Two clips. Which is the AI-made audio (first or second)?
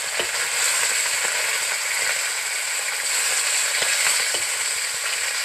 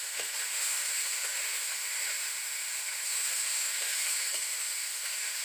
second